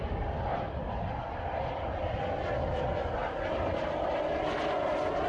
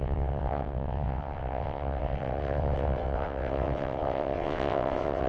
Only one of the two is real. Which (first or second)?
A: first